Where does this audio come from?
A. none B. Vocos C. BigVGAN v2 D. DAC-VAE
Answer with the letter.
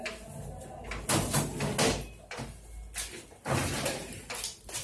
A